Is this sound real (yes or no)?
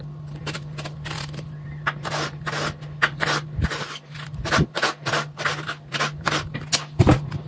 yes